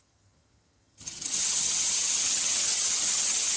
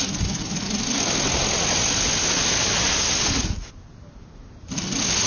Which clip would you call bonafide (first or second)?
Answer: second